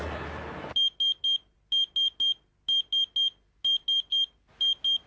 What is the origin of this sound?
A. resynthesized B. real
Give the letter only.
B